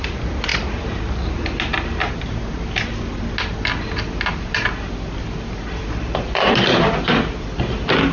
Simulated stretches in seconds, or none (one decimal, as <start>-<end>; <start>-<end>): 0.0-0.5; 4.9-8.1